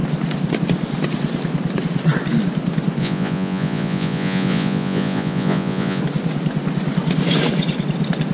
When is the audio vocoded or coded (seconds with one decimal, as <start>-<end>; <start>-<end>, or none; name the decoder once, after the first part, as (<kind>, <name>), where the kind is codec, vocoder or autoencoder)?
3.0-6.0 (vocoder, Vocos)